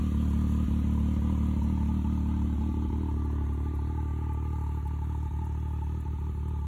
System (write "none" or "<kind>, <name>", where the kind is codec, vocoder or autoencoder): none